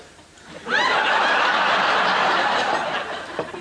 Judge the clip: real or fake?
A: real